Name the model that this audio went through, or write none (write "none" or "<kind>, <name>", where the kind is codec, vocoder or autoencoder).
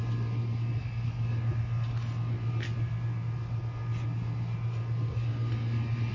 none